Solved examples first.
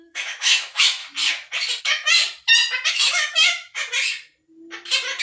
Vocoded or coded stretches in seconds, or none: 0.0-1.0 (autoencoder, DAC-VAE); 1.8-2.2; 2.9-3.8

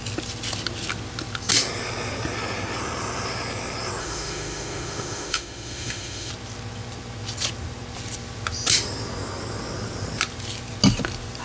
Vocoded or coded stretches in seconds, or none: 4.0-6.3 (autoencoder, DAC-VAE)

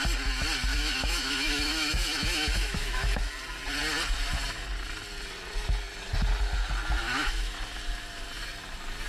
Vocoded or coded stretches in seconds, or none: 0.7-3.3 (autoencoder, DAC-VAE); 7.0-7.6

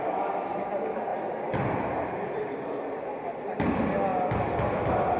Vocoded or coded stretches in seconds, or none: none

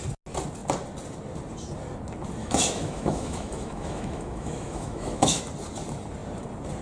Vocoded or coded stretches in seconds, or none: 2.4-5.4 (autoencoder, DAC-VAE)

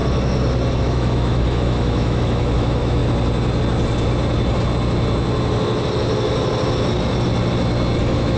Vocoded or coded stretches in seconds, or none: 0.8-3.0 (autoencoder, DAC-VAE); 8.0-8.4